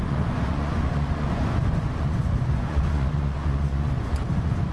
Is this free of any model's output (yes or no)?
no